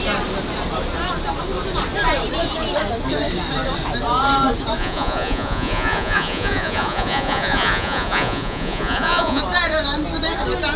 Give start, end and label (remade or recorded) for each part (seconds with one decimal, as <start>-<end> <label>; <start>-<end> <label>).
0.0-4.8 recorded; 4.8-9.4 remade; 9.4-10.8 recorded